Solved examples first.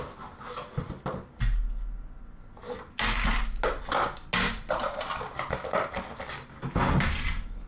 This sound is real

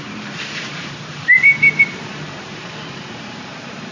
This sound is fake